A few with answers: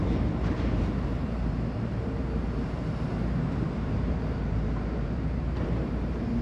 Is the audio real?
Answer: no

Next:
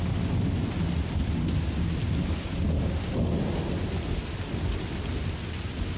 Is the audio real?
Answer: yes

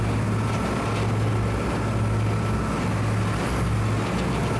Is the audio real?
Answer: yes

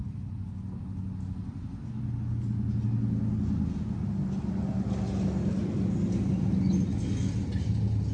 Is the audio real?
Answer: yes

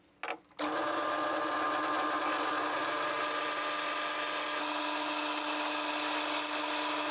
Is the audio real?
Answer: yes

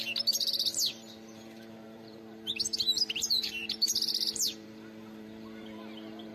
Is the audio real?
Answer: no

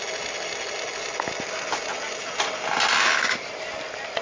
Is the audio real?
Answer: yes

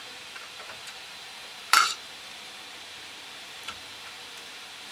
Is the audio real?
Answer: no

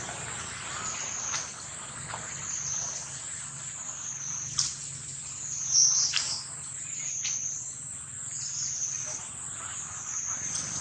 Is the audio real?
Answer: yes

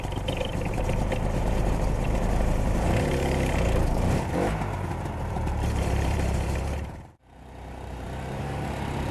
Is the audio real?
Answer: no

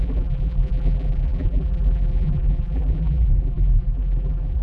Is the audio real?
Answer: no